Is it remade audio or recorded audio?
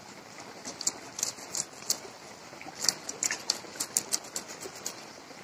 recorded